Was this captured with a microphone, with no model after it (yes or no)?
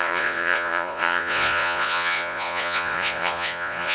no